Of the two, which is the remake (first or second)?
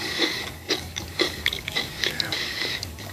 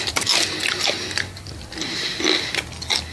first